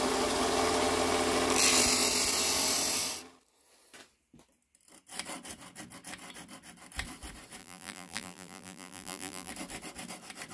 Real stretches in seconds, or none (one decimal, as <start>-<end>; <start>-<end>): 0.0-7.6; 9.5-10.5